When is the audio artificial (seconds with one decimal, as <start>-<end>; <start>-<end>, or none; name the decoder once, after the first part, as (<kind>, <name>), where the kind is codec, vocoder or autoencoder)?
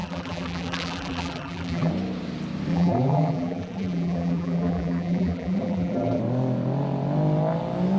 0.0-1.9 (vocoder, BigVGAN v2); 2.7-6.2